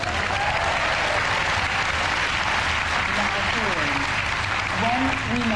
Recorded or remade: recorded